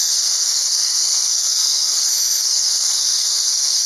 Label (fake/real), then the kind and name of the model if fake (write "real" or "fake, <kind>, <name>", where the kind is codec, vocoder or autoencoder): fake, codec, SNAC